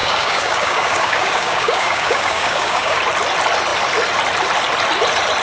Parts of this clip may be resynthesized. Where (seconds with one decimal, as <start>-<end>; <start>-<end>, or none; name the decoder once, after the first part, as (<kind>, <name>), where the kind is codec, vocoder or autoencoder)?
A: 0.0-3.0 (codec, DAC)